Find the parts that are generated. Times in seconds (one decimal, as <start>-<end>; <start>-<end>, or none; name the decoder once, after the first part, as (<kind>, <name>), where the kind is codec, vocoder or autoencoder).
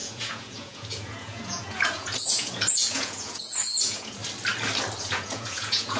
0.0-4.2 (vocoder, Vocos); 5.0-6.0